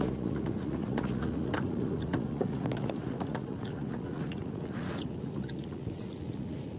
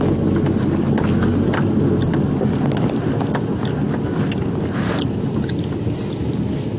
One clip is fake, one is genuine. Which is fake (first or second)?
first